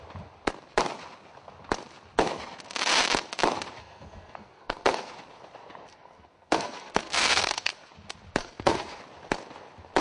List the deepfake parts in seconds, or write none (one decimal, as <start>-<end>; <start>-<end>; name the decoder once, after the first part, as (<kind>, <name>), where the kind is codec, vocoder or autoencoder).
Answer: 3.8-5.1 (codec, SNAC); 5.9-7.9; 8.4-9.0